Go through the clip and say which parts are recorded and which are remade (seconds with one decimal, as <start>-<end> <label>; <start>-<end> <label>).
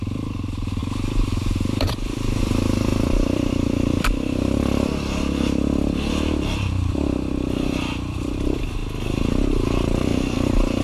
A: 0.0-8.8 remade; 8.8-9.5 recorded; 9.5-10.1 remade; 10.1-10.8 recorded